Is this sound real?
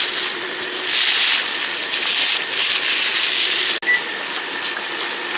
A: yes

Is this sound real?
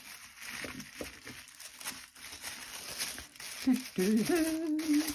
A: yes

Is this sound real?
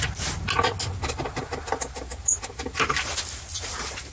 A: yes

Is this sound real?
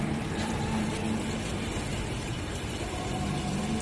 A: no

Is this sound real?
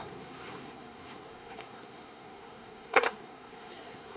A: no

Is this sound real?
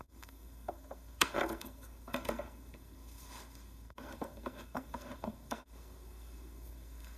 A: no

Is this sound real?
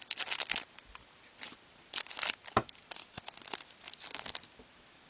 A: yes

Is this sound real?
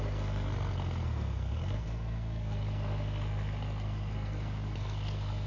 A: no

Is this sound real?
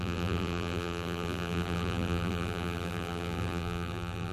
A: no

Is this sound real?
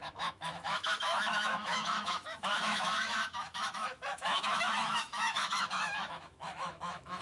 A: no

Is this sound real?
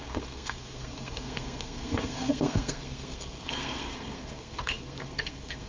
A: no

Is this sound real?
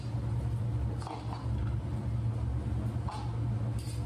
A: yes